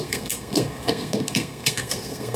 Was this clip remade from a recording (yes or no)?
yes